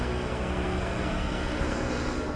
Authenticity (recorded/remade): remade